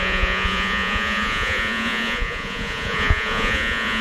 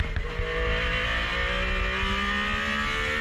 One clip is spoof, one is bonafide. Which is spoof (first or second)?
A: first